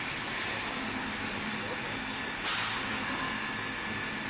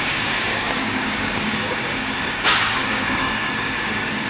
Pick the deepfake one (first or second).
second